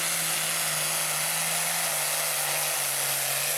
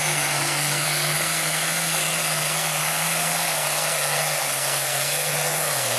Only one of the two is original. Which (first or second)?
first